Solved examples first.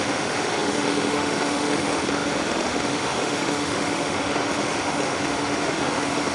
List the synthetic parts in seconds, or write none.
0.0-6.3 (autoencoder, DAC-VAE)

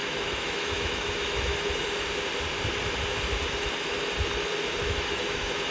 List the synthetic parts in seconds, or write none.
0.0-1.5 (autoencoder, DAC-VAE); 4.9-5.7

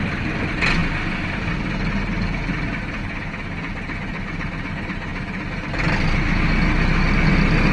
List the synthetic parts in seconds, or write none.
none

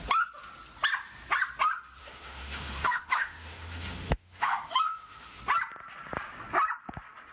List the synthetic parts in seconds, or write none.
2.0-5.4 (autoencoder, DAC-VAE)

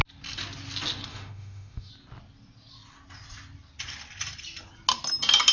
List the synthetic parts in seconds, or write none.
1.1-1.9 (autoencoder, DAC-VAE)

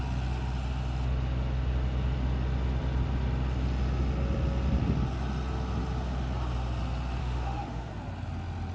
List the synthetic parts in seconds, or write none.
7.2-7.9 (autoencoder, DAC-VAE)